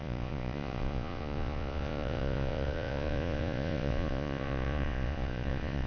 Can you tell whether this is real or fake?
fake